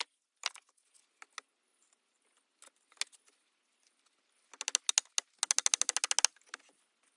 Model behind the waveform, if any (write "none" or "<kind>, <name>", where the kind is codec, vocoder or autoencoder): none